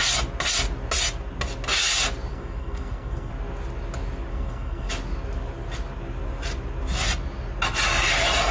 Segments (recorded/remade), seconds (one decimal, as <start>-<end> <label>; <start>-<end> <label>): 0.0-2.3 recorded; 2.3-3.3 remade; 3.3-4.3 recorded; 4.3-4.9 remade; 4.9-8.5 recorded